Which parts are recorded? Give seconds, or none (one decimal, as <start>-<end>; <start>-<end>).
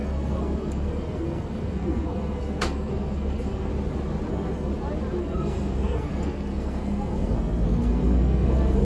3.7-4.3; 4.7-5.2